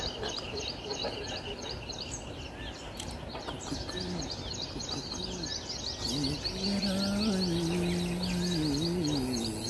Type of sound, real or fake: real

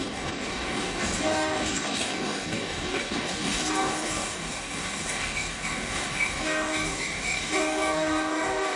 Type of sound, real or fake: fake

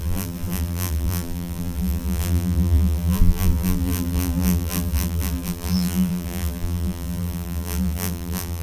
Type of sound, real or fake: fake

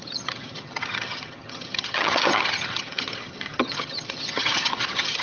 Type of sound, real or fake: fake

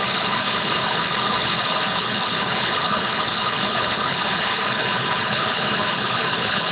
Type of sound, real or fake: fake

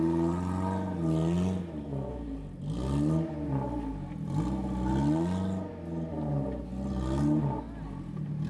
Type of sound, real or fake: real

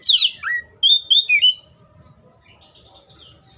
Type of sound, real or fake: real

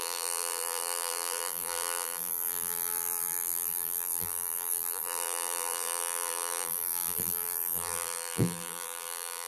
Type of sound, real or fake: fake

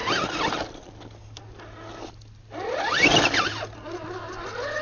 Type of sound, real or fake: real